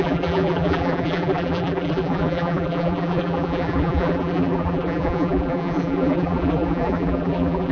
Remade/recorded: remade